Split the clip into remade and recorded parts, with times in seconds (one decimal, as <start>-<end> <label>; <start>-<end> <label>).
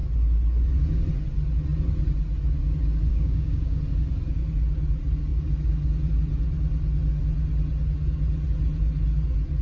0.0-3.1 recorded; 3.1-3.8 remade; 3.8-9.6 recorded